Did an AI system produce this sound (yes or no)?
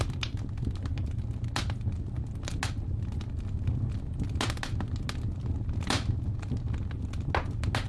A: no